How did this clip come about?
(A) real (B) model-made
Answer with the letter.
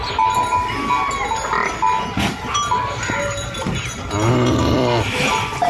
A